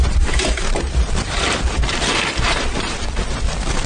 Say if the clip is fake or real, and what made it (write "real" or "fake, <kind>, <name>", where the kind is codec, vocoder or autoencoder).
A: fake, vocoder, BigVGAN v2